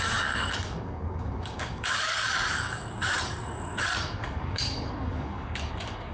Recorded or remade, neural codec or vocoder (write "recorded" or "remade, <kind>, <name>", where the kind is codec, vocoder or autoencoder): remade, codec, DAC